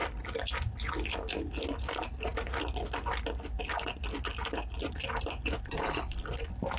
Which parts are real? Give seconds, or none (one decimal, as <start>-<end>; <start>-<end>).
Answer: 0.0-6.8